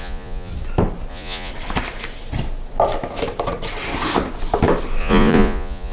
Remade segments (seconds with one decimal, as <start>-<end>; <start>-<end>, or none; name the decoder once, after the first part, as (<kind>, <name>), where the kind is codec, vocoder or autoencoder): 0.0-0.5 (vocoder, Vocos); 1.1-1.5; 5.0-5.9